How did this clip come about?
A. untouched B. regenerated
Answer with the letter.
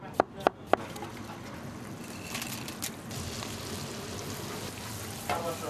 A